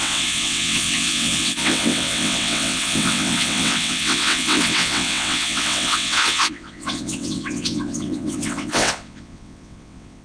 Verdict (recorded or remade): remade